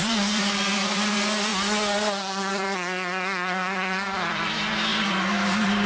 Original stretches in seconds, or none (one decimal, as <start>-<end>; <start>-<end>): 1.5-2.5